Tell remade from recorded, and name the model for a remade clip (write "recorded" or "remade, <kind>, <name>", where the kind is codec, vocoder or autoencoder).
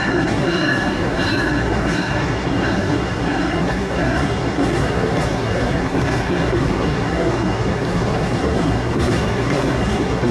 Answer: remade, codec, SNAC